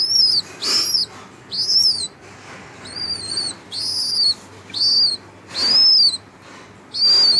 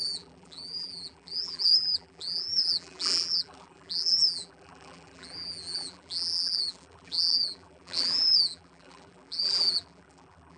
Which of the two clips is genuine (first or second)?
first